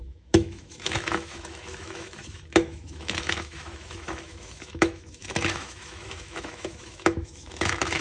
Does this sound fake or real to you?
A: fake